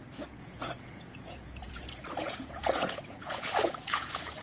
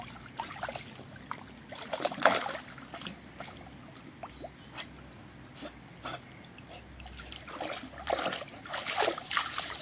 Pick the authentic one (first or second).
second